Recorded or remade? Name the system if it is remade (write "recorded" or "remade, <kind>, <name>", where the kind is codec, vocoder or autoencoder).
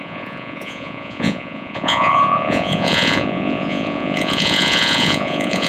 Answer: remade, vocoder, Vocos